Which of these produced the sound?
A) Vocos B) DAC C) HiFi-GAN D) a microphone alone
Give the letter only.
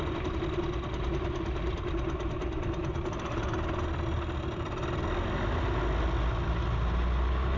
D